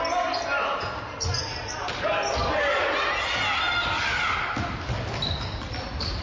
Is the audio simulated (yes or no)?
no